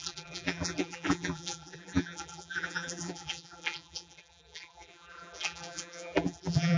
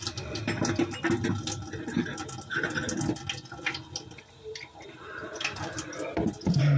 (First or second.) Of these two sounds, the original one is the second